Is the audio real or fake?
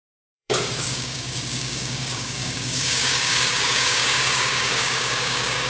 fake